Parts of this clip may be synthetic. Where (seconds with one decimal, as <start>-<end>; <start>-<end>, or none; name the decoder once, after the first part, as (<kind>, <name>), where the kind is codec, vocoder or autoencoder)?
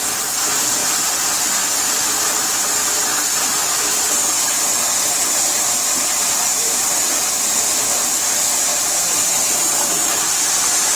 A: 8.7-10.4 (vocoder, BigVGAN v2)